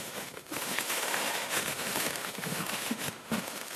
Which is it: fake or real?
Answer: fake